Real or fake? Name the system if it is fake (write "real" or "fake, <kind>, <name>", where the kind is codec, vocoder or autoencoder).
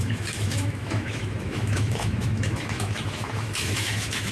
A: fake, autoencoder, DAC-VAE